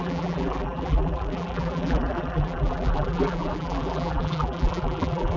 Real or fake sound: fake